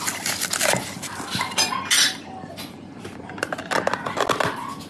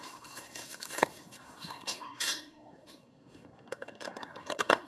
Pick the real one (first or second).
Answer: first